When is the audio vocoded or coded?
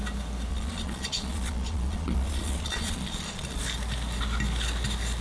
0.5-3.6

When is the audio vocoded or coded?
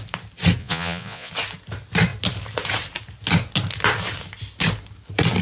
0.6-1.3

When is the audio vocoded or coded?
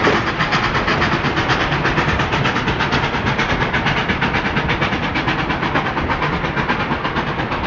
none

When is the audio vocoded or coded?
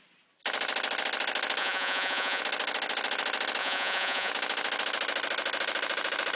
1.6-2.4; 3.6-4.3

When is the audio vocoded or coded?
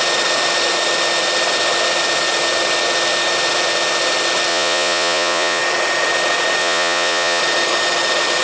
4.5-5.6; 6.6-7.4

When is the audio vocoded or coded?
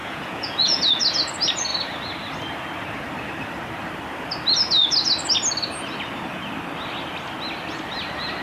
0.0-0.9